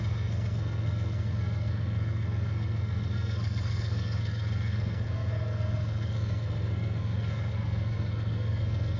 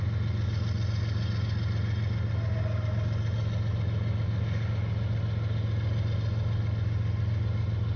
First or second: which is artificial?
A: first